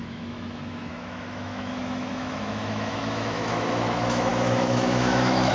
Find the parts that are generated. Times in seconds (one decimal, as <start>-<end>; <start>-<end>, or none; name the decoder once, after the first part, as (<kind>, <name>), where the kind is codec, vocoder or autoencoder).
0.0-5.5 (autoencoder, DAC-VAE)